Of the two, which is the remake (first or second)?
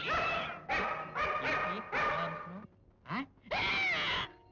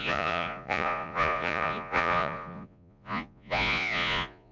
second